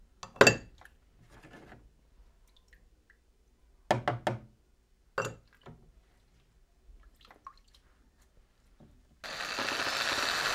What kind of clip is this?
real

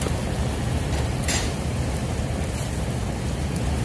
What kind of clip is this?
fake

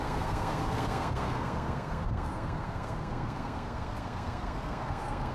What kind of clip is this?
fake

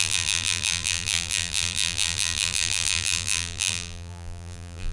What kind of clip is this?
fake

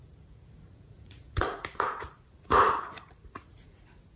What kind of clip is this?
fake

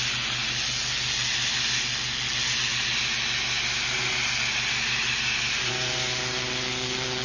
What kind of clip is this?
real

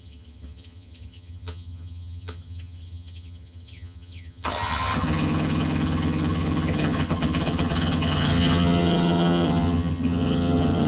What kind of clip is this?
fake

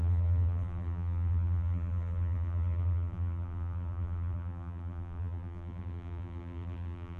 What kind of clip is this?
fake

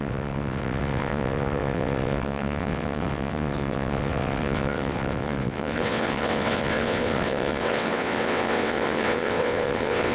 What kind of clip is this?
fake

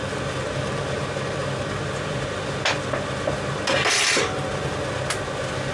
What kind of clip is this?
real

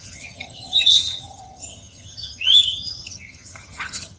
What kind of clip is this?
fake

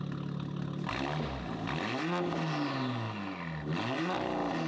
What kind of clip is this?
real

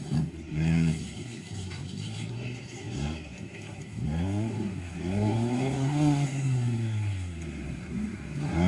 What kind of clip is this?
fake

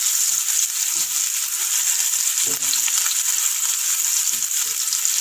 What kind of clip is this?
real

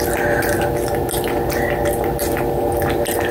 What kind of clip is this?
real